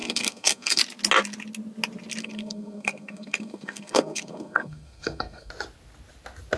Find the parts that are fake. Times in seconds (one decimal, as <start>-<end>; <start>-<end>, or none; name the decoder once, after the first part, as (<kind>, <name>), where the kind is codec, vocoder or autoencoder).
0.0-0.8 (codec, SNAC); 2.2-5.5